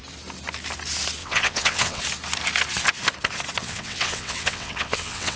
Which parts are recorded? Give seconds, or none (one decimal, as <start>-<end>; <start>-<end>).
0.0-1.2; 2.0-3.6

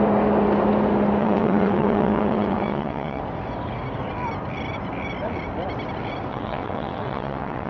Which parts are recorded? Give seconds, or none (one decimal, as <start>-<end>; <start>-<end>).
0.0-1.2; 3.2-6.3

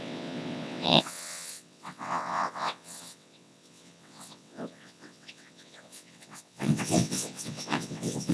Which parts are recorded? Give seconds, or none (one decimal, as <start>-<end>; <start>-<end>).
none

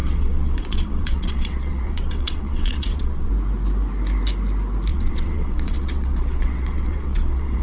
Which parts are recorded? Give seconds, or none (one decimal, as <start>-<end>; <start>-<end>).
3.3-4.9

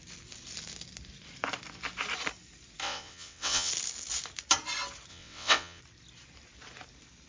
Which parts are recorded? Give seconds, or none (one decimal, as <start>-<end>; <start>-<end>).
0.0-2.8; 3.7-5.1; 5.8-7.3

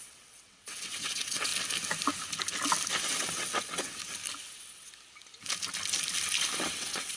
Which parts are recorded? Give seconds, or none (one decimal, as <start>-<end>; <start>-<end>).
1.5-3.1; 4.0-4.5; 4.9-6.6

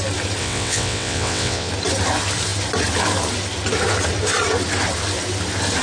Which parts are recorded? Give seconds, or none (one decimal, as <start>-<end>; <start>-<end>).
0.0-0.4; 1.7-5.8